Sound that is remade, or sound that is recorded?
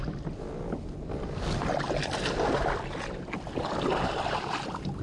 recorded